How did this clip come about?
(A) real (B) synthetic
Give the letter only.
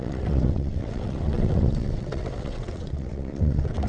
B